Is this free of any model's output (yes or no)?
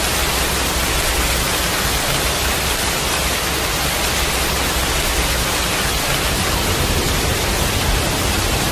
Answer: yes